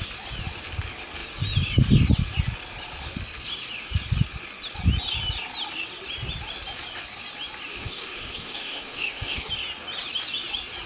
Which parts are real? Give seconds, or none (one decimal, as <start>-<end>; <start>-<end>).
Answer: 0.0-7.7; 9.5-10.9